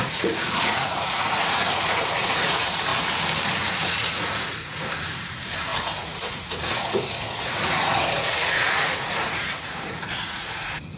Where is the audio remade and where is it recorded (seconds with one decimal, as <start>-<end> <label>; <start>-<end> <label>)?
0.0-2.9 remade; 2.9-3.7 recorded; 3.7-11.0 remade